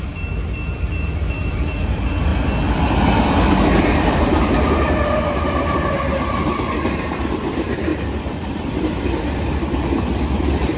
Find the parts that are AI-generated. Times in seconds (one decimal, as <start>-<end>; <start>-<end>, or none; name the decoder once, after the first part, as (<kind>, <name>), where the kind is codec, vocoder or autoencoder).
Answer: 0.0-2.3 (vocoder, BigVGAN v2); 2.8-4.3; 7.5-10.8